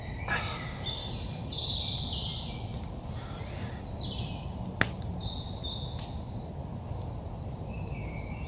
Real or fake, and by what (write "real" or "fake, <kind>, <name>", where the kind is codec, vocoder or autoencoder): real